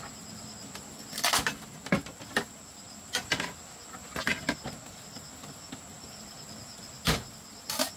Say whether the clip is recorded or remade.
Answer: recorded